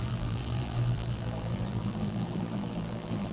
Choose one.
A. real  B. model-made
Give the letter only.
B